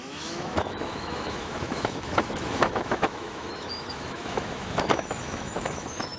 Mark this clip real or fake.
fake